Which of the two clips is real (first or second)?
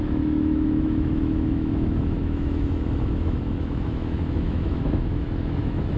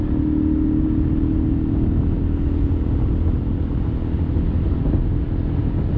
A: second